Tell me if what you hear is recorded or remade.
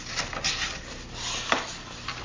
recorded